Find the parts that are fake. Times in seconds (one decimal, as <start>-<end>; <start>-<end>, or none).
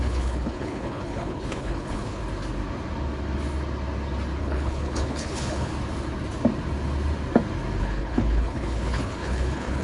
0.0-2.2; 4.4-5.7; 7.8-9.8